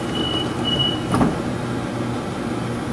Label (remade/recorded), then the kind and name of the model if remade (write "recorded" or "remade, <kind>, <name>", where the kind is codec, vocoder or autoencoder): recorded